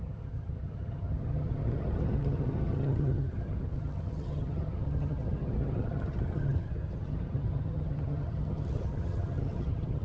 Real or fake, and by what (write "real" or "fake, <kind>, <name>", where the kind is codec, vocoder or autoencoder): fake, vocoder, HiFi-GAN